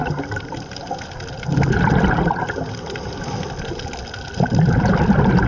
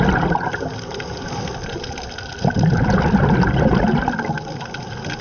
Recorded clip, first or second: second